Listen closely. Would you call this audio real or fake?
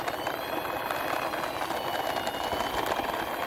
real